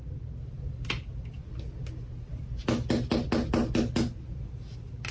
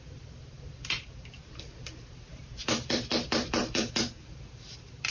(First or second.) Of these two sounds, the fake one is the second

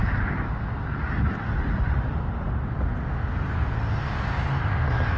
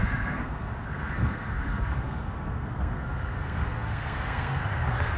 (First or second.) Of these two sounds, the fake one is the second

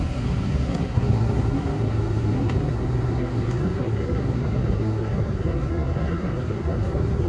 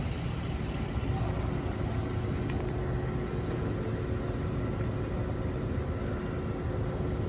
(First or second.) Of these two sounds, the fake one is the first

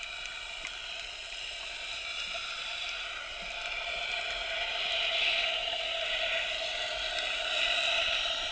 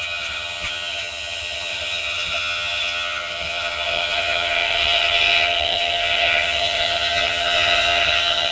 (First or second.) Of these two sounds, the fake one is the second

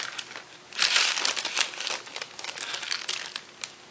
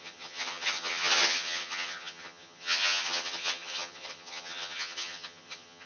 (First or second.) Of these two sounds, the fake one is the second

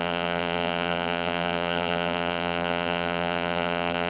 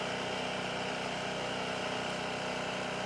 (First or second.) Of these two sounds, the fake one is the first